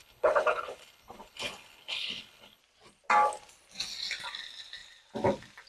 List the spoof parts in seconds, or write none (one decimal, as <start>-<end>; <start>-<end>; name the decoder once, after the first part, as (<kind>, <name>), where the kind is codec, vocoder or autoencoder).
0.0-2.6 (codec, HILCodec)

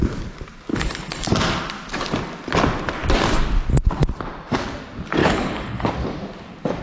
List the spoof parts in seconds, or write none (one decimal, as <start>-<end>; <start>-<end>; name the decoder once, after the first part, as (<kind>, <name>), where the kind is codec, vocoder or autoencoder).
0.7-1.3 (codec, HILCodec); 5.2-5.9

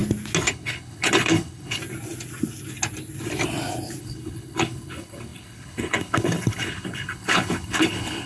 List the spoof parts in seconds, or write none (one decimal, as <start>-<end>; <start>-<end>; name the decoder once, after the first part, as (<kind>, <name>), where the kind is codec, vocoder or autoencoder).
0.5-1.8 (codec, HILCodec); 4.0-8.3

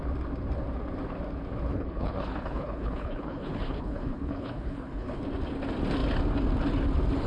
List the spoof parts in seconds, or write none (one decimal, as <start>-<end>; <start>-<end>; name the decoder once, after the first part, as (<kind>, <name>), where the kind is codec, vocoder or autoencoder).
1.7-5.2 (codec, HILCodec)

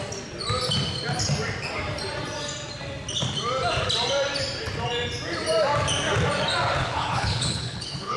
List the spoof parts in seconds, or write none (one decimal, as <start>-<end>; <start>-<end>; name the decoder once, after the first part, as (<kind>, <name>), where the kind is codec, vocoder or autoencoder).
6.8-8.2 (codec, HILCodec)

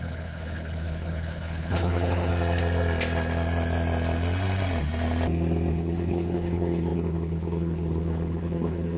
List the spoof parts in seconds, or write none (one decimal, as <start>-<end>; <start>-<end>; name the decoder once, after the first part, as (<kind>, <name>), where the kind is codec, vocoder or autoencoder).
0.0-2.3 (codec, HILCodec); 5.7-9.0

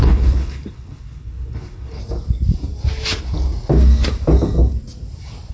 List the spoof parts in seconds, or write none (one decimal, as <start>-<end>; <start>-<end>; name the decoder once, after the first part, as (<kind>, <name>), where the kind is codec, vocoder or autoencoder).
0.0-2.0 (codec, HILCodec)

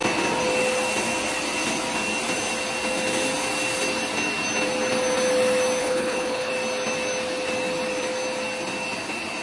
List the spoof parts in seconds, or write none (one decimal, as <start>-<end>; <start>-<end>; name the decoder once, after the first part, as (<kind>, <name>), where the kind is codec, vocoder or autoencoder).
5.8-6.5 (codec, HILCodec)